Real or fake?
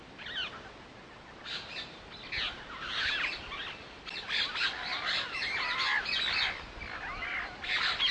real